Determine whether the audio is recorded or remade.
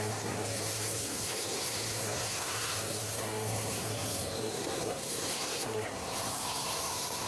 remade